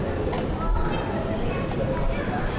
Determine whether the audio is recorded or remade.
recorded